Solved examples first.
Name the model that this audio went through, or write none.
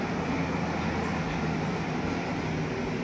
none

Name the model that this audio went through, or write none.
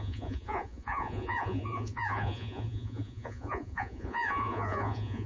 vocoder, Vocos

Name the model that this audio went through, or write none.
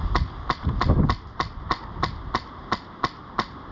none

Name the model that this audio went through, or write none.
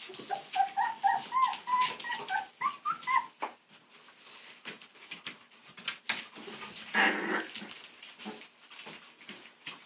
none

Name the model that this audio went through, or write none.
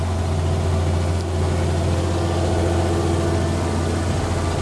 none